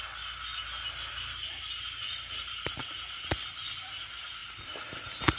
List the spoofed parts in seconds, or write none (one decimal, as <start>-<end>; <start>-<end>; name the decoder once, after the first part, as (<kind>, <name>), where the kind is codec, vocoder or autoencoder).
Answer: none